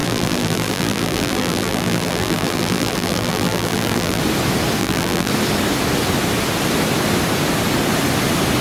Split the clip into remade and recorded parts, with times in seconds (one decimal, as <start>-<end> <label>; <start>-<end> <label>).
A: 0.0-4.2 remade; 4.2-4.8 recorded; 4.8-5.3 remade; 5.3-8.6 recorded